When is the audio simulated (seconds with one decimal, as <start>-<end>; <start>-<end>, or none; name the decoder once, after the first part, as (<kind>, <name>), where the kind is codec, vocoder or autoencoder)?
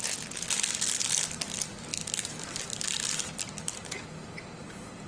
none